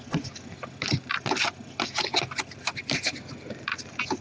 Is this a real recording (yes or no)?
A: yes